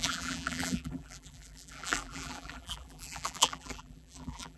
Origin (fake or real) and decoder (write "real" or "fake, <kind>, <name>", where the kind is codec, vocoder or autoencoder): fake, vocoder, BigVGAN v2